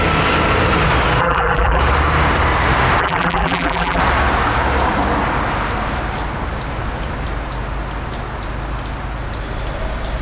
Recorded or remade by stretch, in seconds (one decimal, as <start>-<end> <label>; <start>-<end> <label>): 0.0-1.2 recorded; 1.2-1.8 remade; 1.8-3.0 recorded; 3.0-4.0 remade; 4.0-10.2 recorded